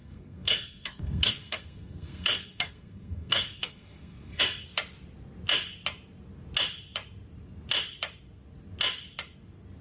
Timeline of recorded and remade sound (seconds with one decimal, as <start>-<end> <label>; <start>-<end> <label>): 0.0-4.4 remade; 4.4-9.8 recorded